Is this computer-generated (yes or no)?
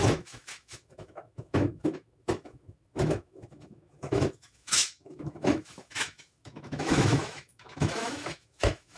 yes